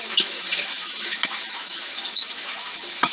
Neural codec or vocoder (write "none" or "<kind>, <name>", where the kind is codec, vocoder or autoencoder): autoencoder, DAC-VAE